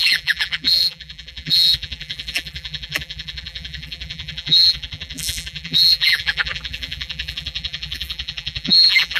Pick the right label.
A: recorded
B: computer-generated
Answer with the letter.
B